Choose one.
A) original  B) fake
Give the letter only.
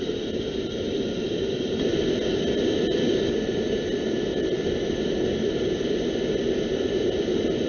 A